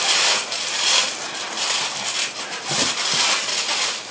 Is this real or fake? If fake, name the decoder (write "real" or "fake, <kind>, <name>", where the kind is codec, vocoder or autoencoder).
real